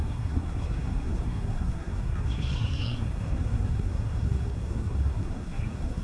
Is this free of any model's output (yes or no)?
no